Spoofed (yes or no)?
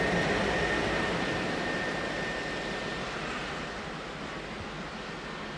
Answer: no